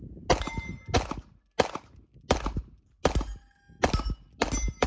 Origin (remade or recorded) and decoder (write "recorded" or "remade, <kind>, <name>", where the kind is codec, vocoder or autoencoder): recorded